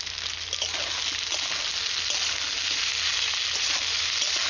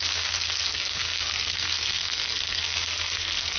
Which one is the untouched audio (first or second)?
first